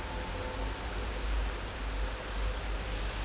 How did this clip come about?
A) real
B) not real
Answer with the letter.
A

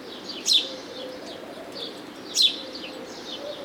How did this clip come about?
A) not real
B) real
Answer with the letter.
B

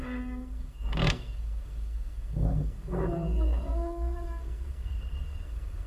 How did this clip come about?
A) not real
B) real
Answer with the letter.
A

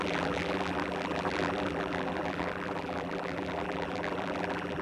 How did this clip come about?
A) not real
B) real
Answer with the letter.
A